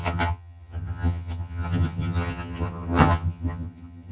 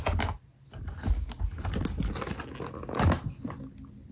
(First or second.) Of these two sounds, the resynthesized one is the first